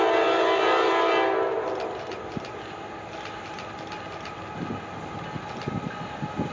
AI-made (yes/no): no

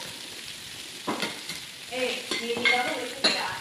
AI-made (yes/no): no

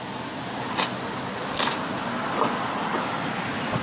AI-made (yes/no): no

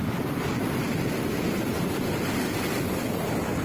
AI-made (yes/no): no